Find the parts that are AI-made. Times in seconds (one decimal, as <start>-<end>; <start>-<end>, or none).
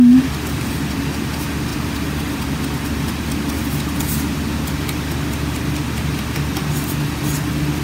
none